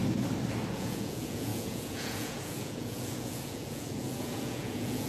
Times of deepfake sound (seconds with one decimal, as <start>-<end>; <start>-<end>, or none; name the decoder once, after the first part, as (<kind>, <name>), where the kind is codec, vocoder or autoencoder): 0.7-5.1 (vocoder, Vocos)